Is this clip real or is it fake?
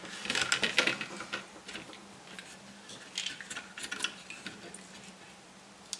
real